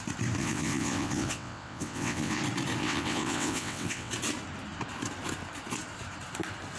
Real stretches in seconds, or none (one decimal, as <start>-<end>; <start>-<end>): 0.0-0.4; 2.4-2.8; 4.1-6.8